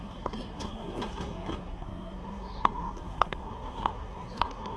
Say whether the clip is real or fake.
fake